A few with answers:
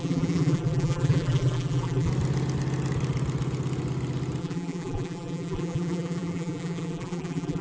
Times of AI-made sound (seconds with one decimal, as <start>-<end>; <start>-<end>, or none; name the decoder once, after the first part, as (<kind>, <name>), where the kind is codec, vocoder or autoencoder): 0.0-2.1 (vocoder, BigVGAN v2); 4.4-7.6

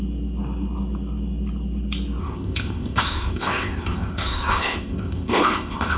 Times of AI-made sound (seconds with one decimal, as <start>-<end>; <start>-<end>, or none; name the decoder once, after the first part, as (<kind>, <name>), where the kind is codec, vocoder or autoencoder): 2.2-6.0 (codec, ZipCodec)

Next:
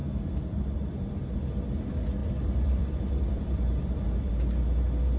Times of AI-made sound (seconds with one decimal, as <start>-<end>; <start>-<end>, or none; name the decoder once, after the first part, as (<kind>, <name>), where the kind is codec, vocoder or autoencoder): 0.0-0.7 (vocoder, BigVGAN v2); 2.2-4.3

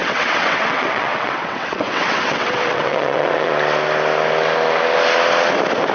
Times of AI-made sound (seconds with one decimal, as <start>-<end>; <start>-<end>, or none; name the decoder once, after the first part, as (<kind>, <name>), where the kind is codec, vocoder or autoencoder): 0.0-3.5 (vocoder, WaveNeXt)

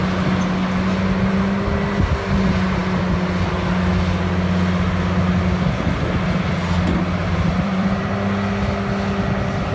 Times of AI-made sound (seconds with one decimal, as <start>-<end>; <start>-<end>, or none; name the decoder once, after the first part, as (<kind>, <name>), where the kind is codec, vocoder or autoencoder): 7.2-8.1 (vocoder, BigVGAN v2)

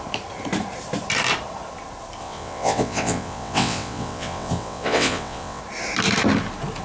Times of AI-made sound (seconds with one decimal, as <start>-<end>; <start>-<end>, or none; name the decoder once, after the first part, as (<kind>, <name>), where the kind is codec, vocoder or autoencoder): 2.2-5.6 (vocoder, WaveNeXt)

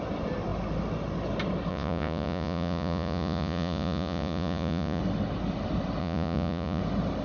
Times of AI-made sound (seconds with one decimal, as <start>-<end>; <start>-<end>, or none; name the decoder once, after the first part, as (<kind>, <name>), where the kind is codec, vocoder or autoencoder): 1.7-5.0 (vocoder, Vocos); 6.0-6.8

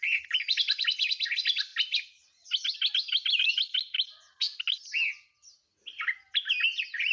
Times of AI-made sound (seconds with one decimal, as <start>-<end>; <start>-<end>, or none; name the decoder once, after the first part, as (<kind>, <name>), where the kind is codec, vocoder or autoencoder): none